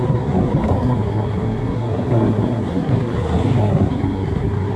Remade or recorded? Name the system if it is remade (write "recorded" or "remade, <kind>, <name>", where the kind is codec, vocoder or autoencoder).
remade, codec, SNAC